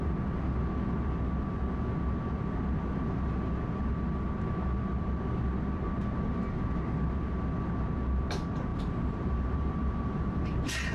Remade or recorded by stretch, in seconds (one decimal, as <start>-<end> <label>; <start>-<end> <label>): 0.0-8.7 recorded; 8.7-10.4 remade; 10.4-10.9 recorded